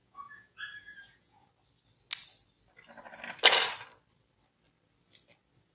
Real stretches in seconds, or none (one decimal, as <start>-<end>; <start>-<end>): 1.5-5.7